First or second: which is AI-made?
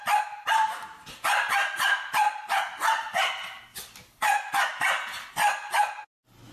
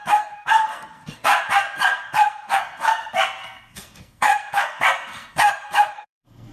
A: second